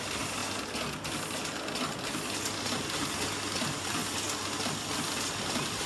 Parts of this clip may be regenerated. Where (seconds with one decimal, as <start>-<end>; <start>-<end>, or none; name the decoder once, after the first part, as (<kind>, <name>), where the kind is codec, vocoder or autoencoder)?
0.0-0.4 (vocoder, BigVGAN v2); 2.8-4.0; 4.6-5.9